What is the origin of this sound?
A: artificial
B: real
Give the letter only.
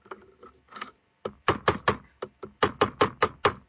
B